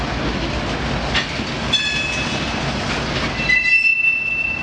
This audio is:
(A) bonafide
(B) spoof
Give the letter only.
A